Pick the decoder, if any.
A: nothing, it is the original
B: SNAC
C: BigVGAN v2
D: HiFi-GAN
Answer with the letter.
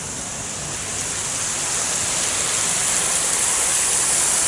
A